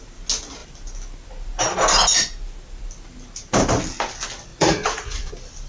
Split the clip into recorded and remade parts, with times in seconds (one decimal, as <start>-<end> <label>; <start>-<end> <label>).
0.0-4.5 recorded; 4.5-5.3 remade; 5.3-5.7 recorded